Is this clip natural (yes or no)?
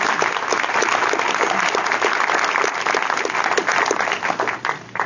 yes